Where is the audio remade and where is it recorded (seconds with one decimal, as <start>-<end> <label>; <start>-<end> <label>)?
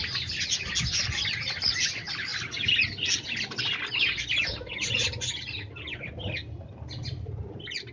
0.0-7.9 recorded